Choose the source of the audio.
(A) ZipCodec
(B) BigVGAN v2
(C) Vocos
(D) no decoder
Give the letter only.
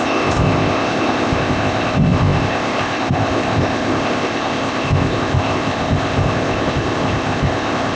A